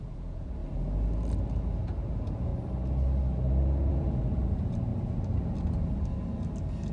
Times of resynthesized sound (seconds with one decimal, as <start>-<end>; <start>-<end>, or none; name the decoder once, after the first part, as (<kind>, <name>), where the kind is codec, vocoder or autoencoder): 0.0-0.6 (vocoder, Vocos); 1.8-2.5; 3.9-4.9